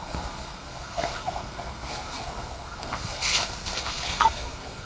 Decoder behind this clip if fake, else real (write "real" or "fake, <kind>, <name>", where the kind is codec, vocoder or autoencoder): fake, codec, SNAC